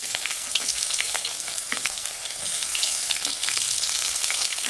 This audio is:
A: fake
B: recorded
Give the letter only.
A